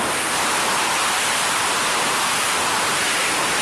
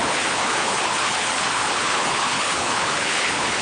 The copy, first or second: second